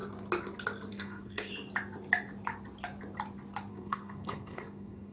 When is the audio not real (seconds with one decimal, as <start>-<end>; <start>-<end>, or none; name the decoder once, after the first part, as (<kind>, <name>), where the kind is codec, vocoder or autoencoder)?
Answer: 0.9-1.5 (codec, SNAC); 3.7-5.1